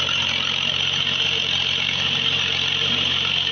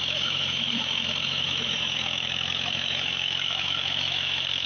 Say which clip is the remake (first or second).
second